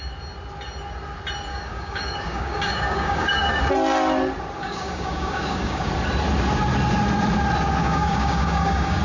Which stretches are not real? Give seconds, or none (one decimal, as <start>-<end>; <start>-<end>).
1.5-3.6; 4.6-5.9; 7.8-9.0